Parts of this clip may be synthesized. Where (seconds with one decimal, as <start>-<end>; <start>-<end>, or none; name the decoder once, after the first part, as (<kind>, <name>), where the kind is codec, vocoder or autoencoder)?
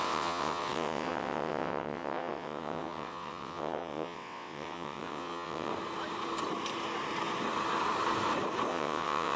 0.0-5.7 (vocoder, WaveNeXt); 8.7-9.4